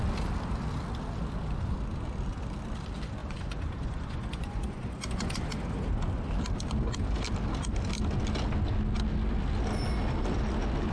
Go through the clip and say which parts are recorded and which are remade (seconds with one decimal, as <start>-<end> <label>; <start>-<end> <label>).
0.0-3.2 recorded; 3.2-5.4 remade; 5.4-10.9 recorded